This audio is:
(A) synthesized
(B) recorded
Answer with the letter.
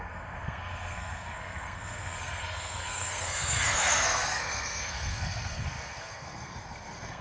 A